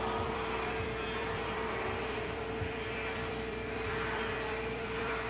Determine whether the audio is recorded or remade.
remade